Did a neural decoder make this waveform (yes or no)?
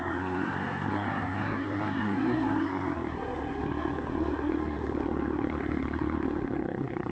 yes